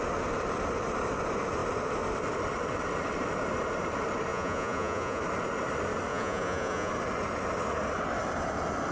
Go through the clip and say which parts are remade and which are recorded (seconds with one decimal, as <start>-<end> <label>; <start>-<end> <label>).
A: 0.0-4.3 recorded; 4.3-5.2 remade; 5.2-6.1 recorded; 6.1-6.9 remade; 6.9-8.9 recorded